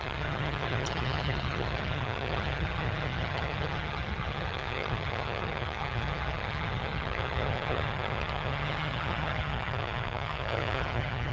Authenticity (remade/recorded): remade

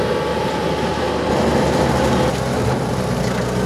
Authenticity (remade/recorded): recorded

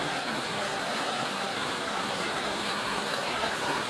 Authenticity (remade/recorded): remade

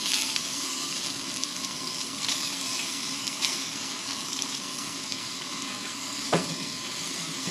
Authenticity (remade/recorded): remade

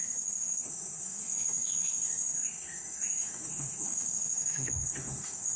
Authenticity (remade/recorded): remade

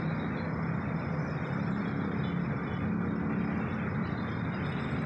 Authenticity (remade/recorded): recorded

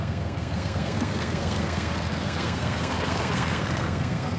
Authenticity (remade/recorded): remade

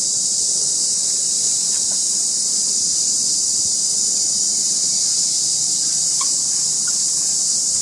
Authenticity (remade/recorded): remade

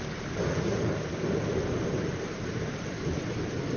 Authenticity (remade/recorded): recorded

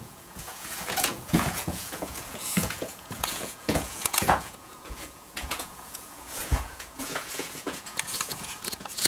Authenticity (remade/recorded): remade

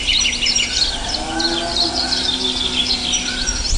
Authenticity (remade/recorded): recorded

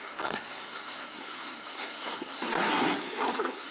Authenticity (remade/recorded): remade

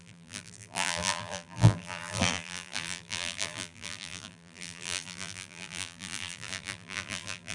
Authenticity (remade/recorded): remade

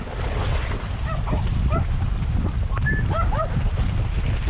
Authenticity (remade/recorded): recorded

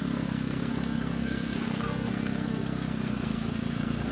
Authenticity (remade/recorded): remade